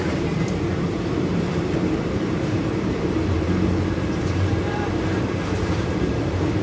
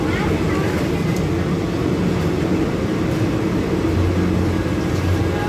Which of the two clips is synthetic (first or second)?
first